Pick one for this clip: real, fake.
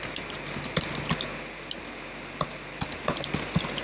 real